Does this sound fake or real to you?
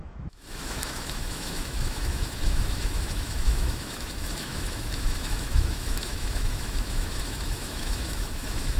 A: fake